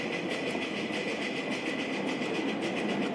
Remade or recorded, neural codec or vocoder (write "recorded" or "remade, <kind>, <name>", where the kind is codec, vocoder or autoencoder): recorded